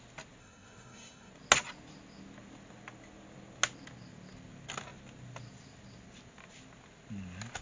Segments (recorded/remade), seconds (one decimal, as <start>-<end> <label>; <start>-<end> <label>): 0.0-0.4 recorded; 0.4-1.3 remade; 1.3-7.6 recorded